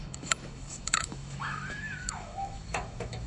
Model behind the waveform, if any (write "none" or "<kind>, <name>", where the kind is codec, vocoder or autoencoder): autoencoder, DAC-VAE